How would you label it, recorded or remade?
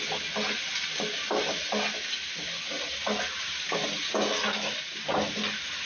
recorded